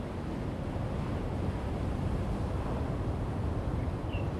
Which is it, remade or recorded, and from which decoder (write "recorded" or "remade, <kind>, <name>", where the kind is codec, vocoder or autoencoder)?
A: recorded